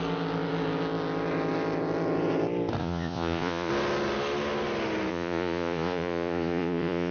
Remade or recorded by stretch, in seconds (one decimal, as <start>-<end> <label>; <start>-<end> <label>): 0.0-2.8 recorded; 2.8-3.7 remade; 3.7-5.1 recorded; 5.1-7.1 remade